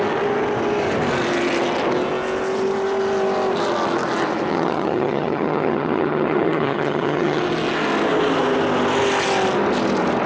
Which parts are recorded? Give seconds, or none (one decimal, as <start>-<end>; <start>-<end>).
0.0-4.5; 7.4-10.3